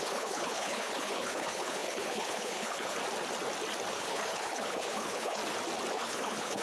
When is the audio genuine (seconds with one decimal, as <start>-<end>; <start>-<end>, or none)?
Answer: 3.0-3.9; 5.4-5.9